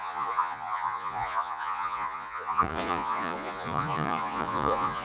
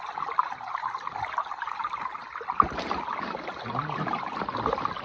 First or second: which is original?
second